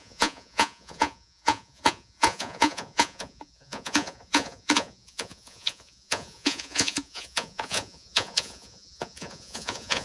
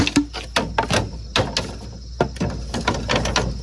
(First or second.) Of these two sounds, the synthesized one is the first